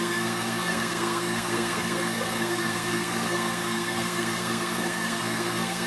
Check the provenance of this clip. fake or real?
fake